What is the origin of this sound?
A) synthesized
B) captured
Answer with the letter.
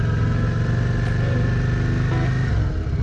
B